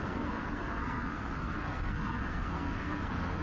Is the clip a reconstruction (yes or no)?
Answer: yes